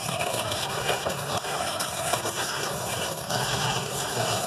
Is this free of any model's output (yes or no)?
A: no